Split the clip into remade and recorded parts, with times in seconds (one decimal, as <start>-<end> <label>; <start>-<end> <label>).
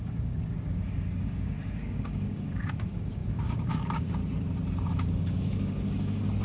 0.0-4.2 remade; 4.2-4.8 recorded; 4.8-6.4 remade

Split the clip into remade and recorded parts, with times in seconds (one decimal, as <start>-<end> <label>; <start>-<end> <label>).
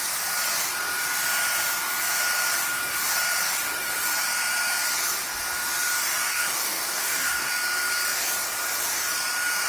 0.0-6.3 recorded; 6.3-7.5 remade; 7.5-9.7 recorded